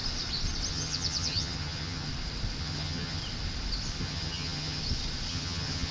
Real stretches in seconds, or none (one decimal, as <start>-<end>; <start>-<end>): 0.0-0.7; 2.1-2.6; 3.2-4.0; 4.8-5.3

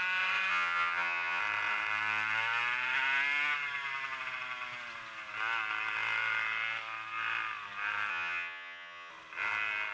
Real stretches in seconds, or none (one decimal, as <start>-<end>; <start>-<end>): 0.0-0.5; 1.4-8.1; 9.1-9.9

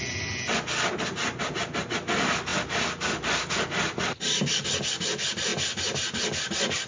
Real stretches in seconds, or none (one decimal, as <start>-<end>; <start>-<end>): 0.0-6.9

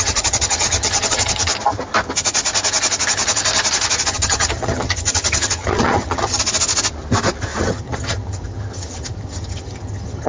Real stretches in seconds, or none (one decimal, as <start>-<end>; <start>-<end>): 1.5-4.1; 6.4-7.6

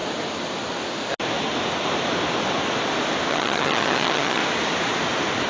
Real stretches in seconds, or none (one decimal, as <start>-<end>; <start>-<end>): 0.0-3.3; 4.4-5.5

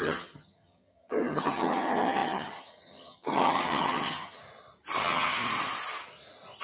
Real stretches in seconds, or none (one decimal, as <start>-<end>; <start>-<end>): 4.4-5.0; 5.4-6.6

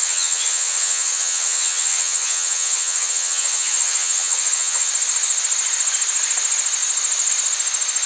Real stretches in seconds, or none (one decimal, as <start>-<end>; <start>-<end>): 4.9-8.1

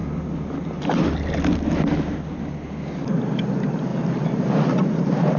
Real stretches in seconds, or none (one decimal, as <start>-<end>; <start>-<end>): 0.0-5.4